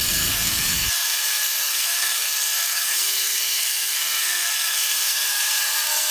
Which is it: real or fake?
fake